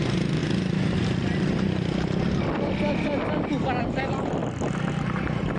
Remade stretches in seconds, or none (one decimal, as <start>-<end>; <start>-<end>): 0.0-0.4; 3.8-4.4